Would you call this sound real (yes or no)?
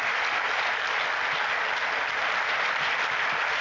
yes